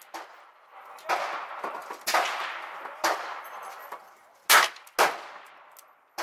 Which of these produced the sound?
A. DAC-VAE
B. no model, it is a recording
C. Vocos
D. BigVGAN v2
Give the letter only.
B